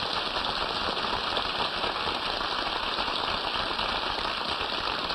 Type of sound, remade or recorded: recorded